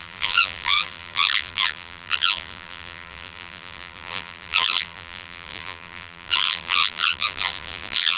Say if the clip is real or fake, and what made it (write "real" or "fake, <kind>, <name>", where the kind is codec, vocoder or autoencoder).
fake, vocoder, BigVGAN v2